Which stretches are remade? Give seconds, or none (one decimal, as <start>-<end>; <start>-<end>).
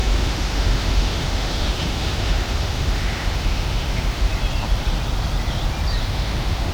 0.0-4.3; 6.0-6.7